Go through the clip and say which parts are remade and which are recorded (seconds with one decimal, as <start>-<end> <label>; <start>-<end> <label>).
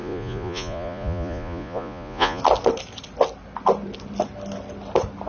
0.0-2.4 remade; 2.4-5.3 recorded